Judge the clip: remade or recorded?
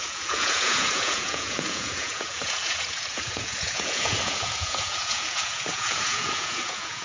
remade